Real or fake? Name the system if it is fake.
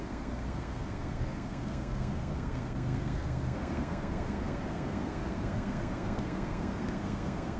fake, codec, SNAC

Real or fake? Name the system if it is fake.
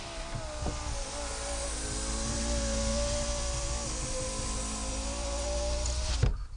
real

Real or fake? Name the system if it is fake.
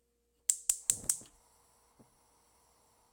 real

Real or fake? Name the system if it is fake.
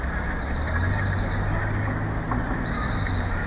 real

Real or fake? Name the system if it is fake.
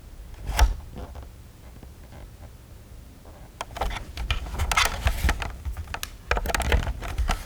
real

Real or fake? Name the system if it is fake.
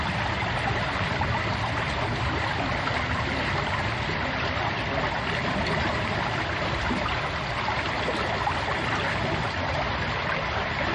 real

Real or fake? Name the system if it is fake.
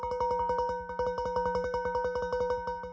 real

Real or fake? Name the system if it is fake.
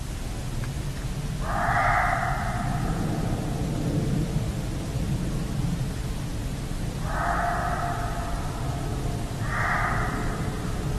real